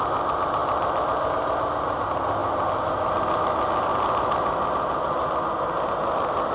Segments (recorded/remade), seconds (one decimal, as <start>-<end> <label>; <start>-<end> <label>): 0.0-2.4 remade; 2.4-3.4 recorded; 3.4-3.9 remade; 3.9-5.5 recorded; 5.5-6.5 remade